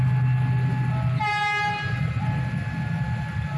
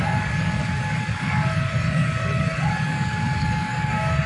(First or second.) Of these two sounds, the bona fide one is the first